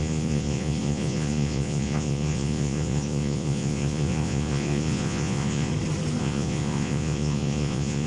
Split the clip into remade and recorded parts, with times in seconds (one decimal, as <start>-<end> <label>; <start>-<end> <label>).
0.0-5.7 remade; 5.7-6.2 recorded; 6.2-8.1 remade